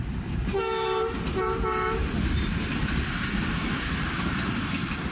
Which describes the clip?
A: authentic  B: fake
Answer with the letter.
A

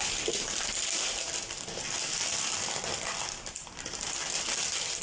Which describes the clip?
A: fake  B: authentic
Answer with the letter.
B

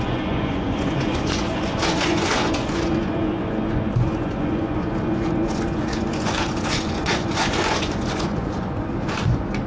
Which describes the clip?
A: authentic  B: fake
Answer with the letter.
B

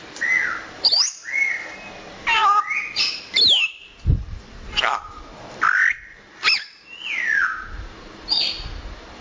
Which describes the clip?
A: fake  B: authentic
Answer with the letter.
B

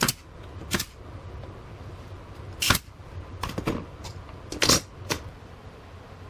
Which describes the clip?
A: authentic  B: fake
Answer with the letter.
A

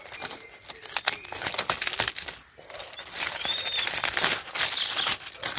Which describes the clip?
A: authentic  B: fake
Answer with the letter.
A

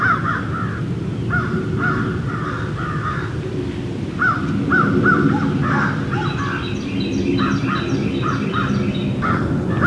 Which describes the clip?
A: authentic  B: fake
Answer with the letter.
A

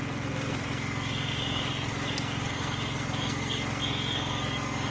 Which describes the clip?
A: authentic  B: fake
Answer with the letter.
B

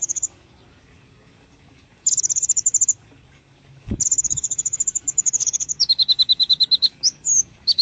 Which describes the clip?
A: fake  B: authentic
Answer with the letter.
A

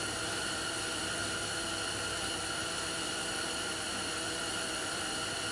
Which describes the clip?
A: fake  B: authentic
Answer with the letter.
B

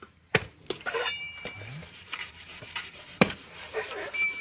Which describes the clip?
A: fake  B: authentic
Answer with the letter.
A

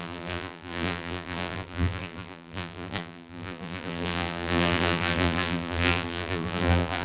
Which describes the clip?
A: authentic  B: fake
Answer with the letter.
B